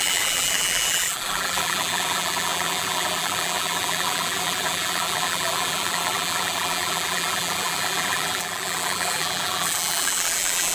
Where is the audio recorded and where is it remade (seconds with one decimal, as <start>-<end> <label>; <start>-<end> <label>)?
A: 0.0-10.7 remade